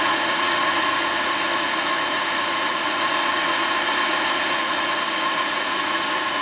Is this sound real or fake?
fake